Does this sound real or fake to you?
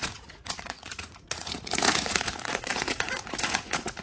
fake